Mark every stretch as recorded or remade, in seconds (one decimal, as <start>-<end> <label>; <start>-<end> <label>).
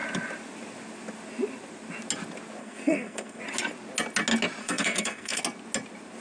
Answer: 0.0-2.6 recorded; 2.6-3.4 remade; 3.4-4.6 recorded; 4.6-5.4 remade; 5.4-6.2 recorded